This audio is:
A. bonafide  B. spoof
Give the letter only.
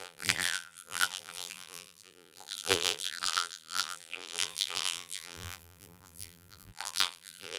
B